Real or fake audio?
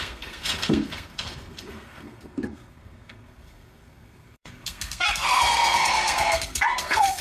fake